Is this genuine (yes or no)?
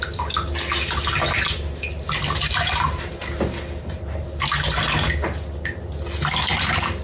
yes